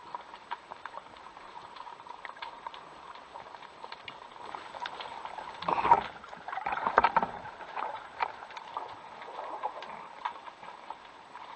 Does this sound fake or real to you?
fake